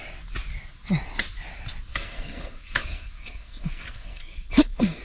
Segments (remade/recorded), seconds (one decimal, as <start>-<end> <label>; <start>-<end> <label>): 0.0-1.9 recorded; 1.9-5.0 remade

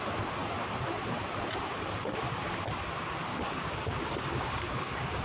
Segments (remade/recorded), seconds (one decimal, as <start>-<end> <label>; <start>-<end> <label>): 0.0-3.3 recorded; 3.3-5.2 remade

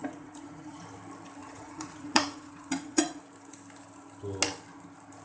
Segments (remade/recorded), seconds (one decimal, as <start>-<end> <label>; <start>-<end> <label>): 0.0-0.8 remade; 0.8-1.4 recorded; 1.4-3.2 remade; 3.2-5.2 recorded

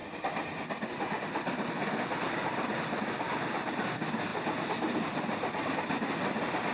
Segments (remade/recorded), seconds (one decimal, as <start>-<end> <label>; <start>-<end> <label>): 0.0-6.7 recorded

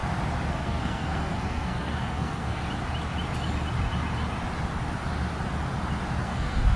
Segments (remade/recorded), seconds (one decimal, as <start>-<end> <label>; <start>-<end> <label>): 0.0-0.5 recorded; 0.5-2.6 remade; 2.6-6.2 recorded; 6.2-6.8 remade

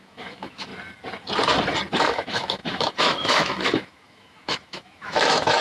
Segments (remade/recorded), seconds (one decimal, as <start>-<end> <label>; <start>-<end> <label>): 0.0-0.7 remade; 0.7-2.0 recorded; 2.0-5.6 remade